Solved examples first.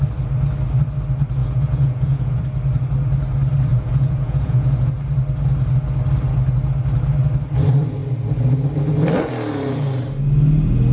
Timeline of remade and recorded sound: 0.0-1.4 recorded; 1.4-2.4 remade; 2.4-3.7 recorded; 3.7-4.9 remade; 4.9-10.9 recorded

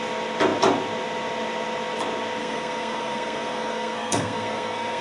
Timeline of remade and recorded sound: 0.0-2.4 recorded; 2.4-5.0 remade

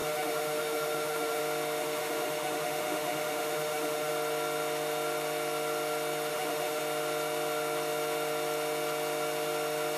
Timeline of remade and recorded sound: 0.0-1.4 remade; 1.4-1.8 recorded; 1.8-4.1 remade; 4.1-6.3 recorded; 6.3-6.8 remade; 6.8-10.0 recorded

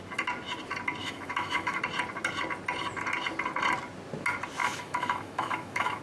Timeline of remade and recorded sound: 0.0-1.0 recorded; 1.0-1.8 remade; 1.8-4.6 recorded; 4.6-6.0 remade

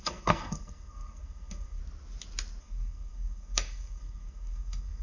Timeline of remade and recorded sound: 0.0-1.8 remade; 1.8-2.6 recorded; 2.6-5.0 remade

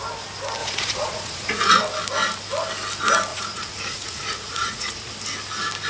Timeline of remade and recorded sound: 0.0-0.6 recorded; 0.6-1.7 remade; 1.7-3.3 recorded; 3.3-5.1 remade; 5.1-5.9 recorded

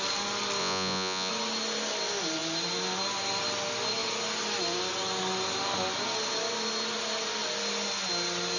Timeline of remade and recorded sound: 0.0-0.6 recorded; 0.6-1.3 remade; 1.3-8.6 recorded